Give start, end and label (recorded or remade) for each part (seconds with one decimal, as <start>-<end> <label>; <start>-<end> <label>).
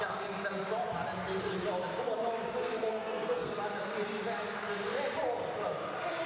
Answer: 0.0-2.6 recorded; 2.6-3.5 remade; 3.5-6.3 recorded